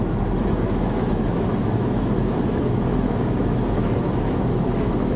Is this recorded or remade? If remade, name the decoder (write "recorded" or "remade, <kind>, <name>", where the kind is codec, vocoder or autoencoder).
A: remade, autoencoder, DAC-VAE